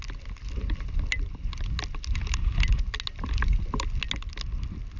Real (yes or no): yes